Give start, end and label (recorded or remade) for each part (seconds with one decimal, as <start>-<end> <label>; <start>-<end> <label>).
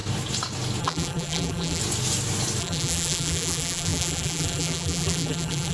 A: 0.0-0.8 recorded; 0.8-1.8 remade; 1.8-2.6 recorded; 2.6-5.7 remade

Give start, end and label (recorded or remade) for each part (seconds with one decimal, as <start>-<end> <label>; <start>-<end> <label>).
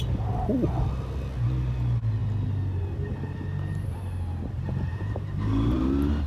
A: 0.0-4.9 recorded; 4.9-5.8 remade; 5.8-6.3 recorded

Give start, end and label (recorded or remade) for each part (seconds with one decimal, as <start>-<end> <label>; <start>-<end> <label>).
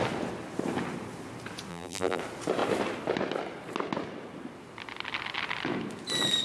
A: 0.0-1.7 recorded; 1.7-2.2 remade; 2.2-6.4 recorded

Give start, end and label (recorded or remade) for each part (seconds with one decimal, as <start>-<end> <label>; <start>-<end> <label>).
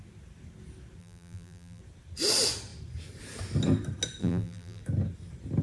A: 0.0-1.0 recorded; 1.0-1.8 remade; 1.8-4.2 recorded; 4.2-4.8 remade; 4.8-5.6 recorded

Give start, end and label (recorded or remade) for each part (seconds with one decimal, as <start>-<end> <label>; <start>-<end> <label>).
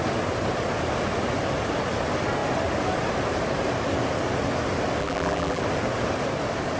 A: 0.0-5.0 recorded; 5.0-5.6 remade; 5.6-6.8 recorded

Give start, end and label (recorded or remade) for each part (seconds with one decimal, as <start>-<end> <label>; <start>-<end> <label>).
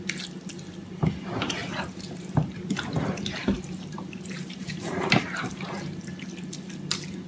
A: 0.0-1.6 recorded; 1.6-2.8 remade; 2.8-3.4 recorded; 3.4-6.1 remade; 6.1-7.3 recorded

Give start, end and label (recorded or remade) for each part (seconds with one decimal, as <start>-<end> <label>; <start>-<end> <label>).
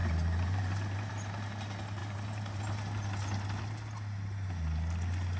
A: 0.0-1.1 remade; 1.1-2.0 recorded; 2.0-2.6 remade; 2.6-5.4 recorded